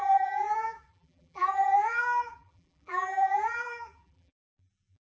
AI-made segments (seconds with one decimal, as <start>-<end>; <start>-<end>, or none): 0.0-5.0